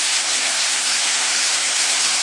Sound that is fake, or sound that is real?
fake